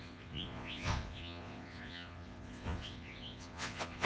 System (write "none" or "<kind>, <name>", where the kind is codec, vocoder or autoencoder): vocoder, Vocos